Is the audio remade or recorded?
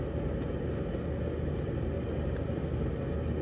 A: recorded